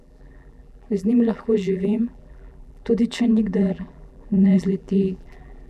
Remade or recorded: remade